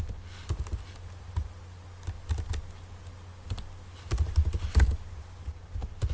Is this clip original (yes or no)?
yes